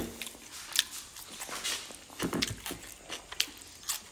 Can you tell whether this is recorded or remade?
recorded